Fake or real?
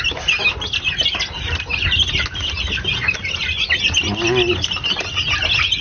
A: real